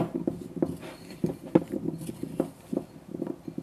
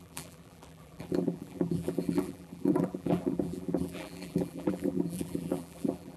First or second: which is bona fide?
first